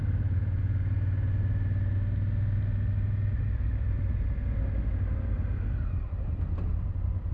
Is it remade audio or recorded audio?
recorded